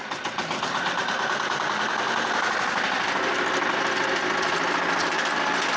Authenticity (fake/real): real